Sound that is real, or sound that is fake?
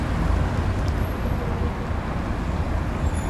real